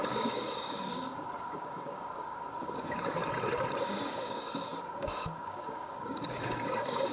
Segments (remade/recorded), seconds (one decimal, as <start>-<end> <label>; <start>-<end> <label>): 0.0-3.2 remade; 3.2-3.8 recorded; 3.8-7.1 remade